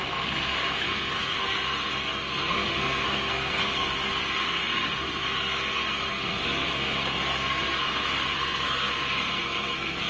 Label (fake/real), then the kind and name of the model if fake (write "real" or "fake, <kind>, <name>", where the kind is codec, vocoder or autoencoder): fake, codec, SNAC